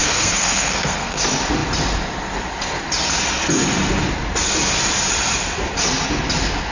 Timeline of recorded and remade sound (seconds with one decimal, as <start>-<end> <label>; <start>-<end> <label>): 0.0-1.2 remade; 1.2-6.7 recorded